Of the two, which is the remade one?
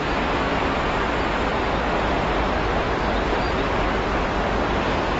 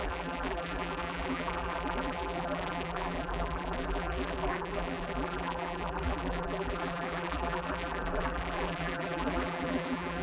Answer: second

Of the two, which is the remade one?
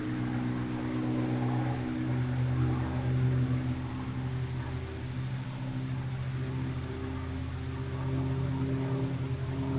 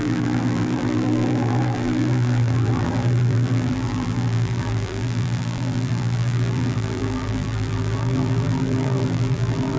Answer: second